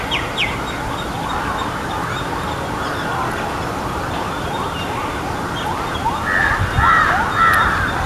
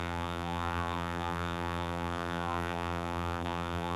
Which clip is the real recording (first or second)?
first